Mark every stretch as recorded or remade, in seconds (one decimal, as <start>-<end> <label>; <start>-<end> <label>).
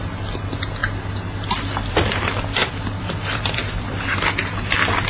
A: 0.0-2.6 recorded; 2.6-4.3 remade; 4.3-5.1 recorded